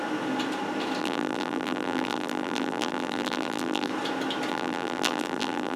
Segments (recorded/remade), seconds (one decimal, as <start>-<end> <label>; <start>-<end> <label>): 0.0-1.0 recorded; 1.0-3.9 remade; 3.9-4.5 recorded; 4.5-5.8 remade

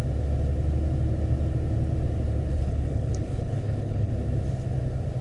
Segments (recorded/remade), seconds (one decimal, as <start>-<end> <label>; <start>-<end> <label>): 0.0-2.5 recorded; 2.5-4.1 remade; 4.1-5.2 recorded

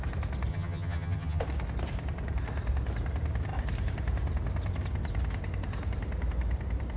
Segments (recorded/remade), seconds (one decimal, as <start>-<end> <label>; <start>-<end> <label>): 0.0-0.5 recorded; 0.5-1.4 remade; 1.4-7.0 recorded

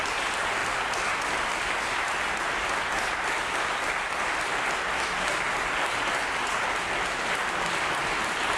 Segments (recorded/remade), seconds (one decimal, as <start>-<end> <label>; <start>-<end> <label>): 0.0-8.6 recorded

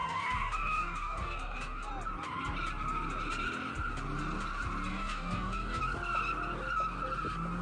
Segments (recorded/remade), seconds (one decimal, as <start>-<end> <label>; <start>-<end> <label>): 0.0-1.9 remade; 1.9-4.9 recorded; 4.9-5.8 remade; 5.8-7.6 recorded

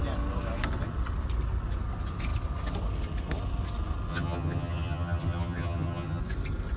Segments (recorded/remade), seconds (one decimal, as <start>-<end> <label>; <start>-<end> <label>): 0.0-4.1 recorded; 4.1-6.2 remade; 6.2-6.8 recorded

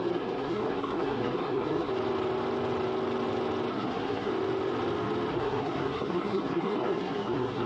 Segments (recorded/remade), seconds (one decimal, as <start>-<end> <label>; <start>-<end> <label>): 0.0-1.9 remade; 1.9-3.7 recorded; 3.7-4.3 remade; 4.3-5.3 recorded; 5.3-7.7 remade

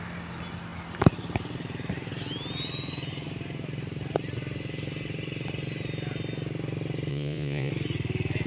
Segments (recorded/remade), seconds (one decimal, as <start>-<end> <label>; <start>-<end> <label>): 0.0-7.1 recorded; 7.1-7.7 remade; 7.7-8.5 recorded